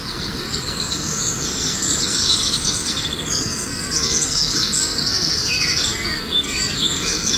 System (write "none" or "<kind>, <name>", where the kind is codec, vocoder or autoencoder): codec, SNAC